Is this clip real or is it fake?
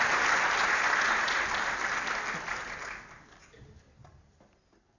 real